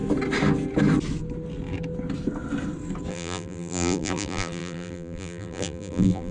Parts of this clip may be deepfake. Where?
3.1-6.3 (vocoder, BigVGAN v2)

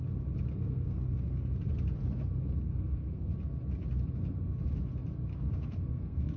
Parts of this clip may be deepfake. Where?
0.5-1.7 (codec, SNAC); 2.7-3.3; 5.3-6.4

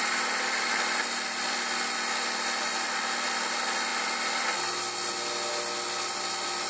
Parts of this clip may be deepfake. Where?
none

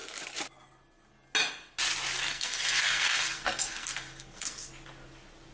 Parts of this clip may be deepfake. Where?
2.3-4.7 (codec, SNAC)